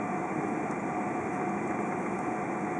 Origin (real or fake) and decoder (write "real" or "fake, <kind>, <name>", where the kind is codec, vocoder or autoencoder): real